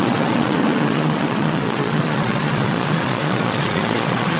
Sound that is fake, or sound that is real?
fake